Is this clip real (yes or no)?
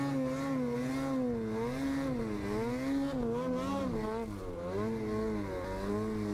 yes